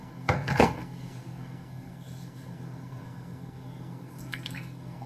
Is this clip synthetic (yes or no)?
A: yes